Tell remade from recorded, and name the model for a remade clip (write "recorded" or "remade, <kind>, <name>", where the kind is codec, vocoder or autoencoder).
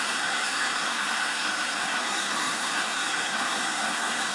remade, codec, SNAC